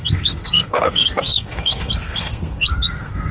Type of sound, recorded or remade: remade